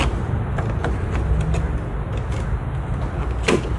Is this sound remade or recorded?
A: recorded